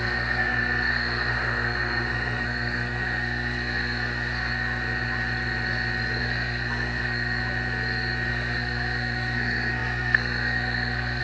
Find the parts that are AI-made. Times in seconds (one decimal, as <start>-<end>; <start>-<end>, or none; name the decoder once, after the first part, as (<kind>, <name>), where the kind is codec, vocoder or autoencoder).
0.0-4.5 (codec, SNAC); 6.2-7.4; 8.3-11.2